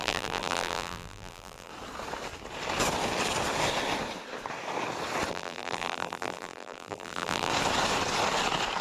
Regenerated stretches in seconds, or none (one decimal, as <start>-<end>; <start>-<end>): 0.0-1.7; 5.3-7.5